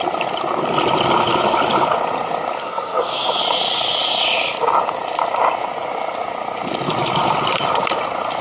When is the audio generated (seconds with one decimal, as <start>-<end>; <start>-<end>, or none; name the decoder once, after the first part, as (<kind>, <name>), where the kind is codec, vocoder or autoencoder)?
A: 2.6-3.4 (codec, SNAC)